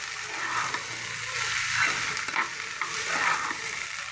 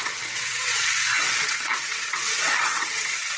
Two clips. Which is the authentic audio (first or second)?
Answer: first